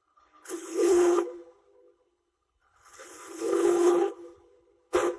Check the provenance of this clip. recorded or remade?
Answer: remade